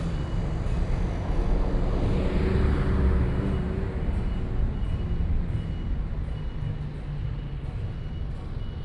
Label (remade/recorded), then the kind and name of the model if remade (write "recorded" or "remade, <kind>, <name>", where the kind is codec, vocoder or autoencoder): recorded